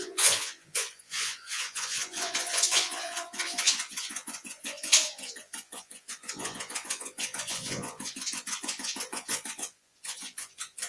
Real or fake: fake